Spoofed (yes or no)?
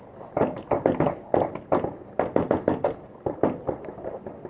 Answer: no